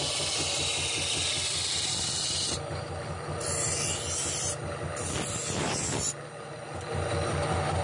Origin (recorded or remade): recorded